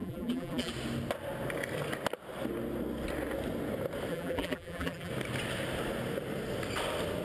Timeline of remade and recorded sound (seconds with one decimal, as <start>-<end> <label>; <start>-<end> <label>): 0.0-0.7 remade; 0.7-4.1 recorded; 4.1-5.1 remade; 5.1-7.2 recorded